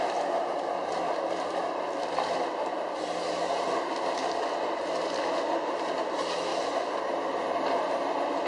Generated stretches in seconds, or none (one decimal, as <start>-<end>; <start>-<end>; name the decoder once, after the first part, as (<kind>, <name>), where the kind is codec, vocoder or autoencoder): none